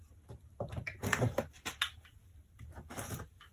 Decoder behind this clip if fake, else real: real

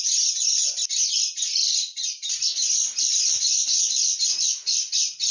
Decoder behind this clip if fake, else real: real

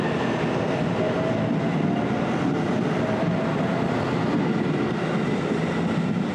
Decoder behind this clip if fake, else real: real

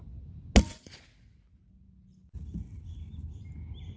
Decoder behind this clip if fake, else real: real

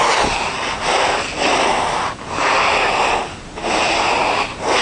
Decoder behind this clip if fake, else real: real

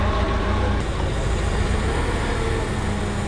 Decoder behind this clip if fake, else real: real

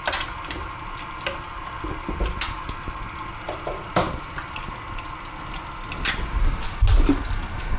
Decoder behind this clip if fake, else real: real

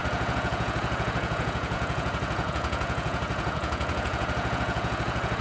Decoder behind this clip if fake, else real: fake, vocoder, Vocos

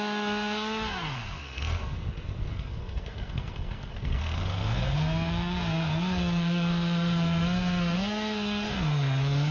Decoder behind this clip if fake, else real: fake, codec, SNAC